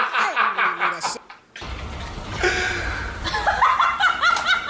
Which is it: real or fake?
real